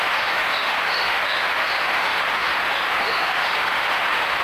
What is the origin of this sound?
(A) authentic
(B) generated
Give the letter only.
B